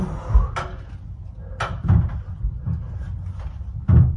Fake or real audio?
real